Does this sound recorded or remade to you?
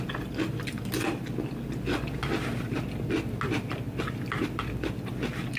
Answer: recorded